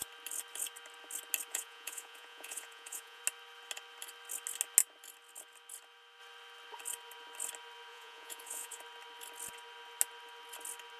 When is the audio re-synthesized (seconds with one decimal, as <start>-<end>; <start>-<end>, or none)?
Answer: 1.5-3.2; 7.9-8.8

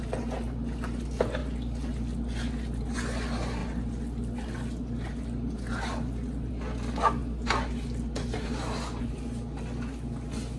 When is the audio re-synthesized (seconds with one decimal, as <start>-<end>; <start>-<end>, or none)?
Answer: none